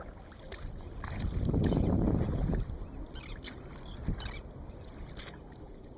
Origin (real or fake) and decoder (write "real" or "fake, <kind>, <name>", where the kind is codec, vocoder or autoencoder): real